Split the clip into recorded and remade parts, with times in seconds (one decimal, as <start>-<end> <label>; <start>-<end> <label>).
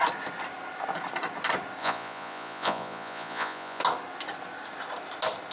0.0-1.8 recorded; 1.8-3.8 remade; 3.8-5.5 recorded